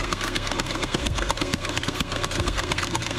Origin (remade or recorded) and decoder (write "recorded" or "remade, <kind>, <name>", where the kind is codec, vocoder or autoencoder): remade, codec, SNAC